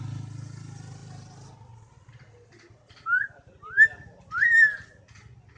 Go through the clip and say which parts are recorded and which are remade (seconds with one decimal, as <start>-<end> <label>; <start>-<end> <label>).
0.0-5.6 recorded